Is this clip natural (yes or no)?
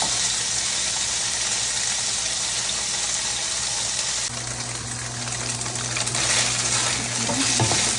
yes